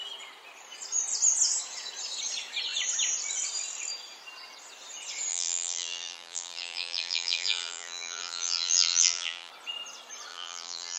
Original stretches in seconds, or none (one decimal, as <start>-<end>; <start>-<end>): 0.0-5.3; 9.5-10.3